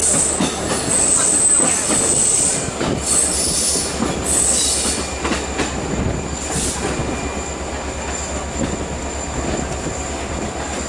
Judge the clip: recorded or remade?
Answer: recorded